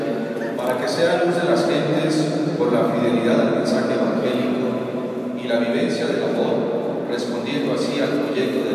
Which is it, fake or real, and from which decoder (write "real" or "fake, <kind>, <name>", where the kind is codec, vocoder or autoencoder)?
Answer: real